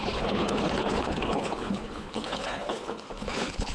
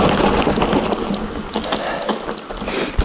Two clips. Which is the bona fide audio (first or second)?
second